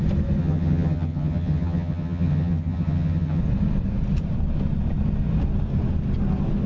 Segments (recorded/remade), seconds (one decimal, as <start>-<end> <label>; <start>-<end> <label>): 0.0-0.4 recorded; 0.4-3.4 remade; 3.4-6.7 recorded